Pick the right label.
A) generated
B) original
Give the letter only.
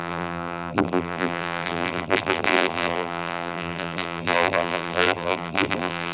A